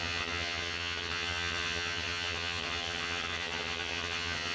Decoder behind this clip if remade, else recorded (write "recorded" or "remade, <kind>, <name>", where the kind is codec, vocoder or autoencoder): remade, vocoder, HiFi-GAN